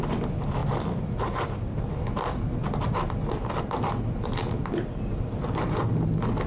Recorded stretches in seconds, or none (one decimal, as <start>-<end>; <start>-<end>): 0.0-6.5